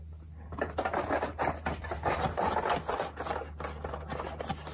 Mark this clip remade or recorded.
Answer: recorded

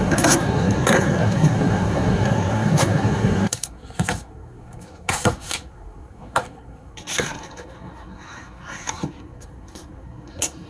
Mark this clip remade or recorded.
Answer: remade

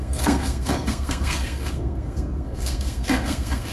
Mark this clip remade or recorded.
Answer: remade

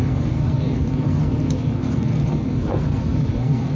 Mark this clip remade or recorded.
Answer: remade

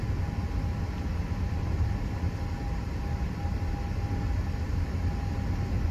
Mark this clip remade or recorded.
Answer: recorded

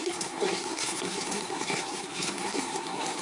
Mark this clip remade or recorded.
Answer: remade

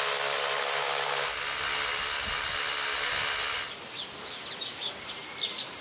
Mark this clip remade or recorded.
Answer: recorded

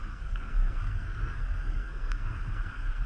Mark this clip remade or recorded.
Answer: remade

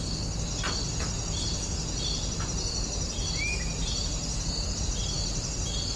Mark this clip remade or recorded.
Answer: recorded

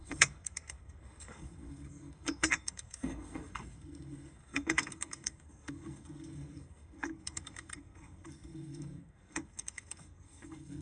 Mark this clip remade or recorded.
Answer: remade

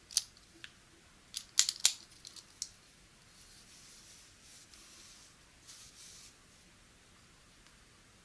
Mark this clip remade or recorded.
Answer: recorded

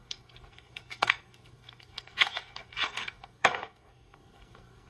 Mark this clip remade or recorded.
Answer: remade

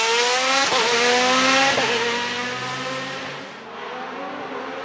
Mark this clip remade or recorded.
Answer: recorded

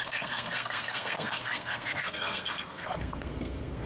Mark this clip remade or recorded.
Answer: remade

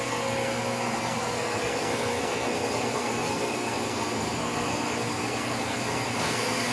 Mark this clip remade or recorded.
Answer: remade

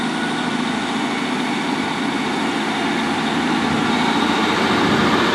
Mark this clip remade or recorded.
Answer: recorded